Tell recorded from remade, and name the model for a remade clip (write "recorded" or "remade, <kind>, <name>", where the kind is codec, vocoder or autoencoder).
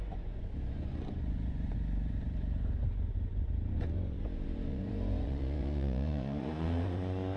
remade, vocoder, Vocos